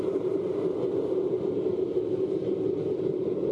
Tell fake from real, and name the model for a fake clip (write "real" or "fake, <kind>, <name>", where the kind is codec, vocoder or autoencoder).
real